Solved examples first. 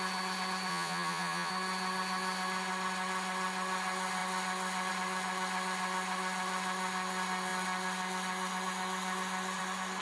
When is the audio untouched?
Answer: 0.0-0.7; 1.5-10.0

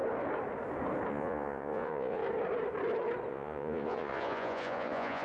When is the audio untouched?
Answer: 0.0-1.1; 2.2-3.3

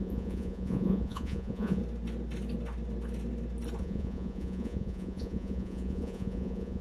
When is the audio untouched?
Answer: 1.8-3.8

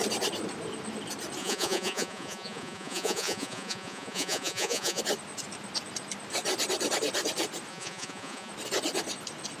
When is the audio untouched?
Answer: 0.0-1.4; 5.0-7.7; 8.5-9.6

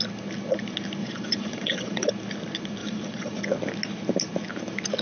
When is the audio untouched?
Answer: 0.0-1.0; 2.1-2.8; 3.4-5.0